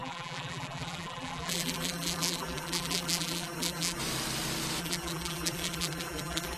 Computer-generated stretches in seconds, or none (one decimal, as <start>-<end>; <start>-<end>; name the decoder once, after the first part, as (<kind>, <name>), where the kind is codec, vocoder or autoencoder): 0.0-4.0 (vocoder, BigVGAN v2); 4.8-6.6